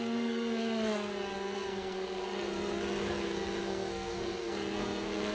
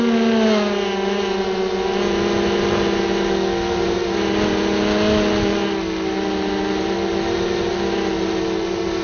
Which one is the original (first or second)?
second